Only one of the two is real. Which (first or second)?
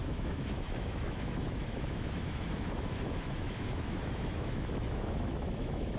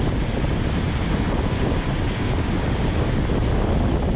second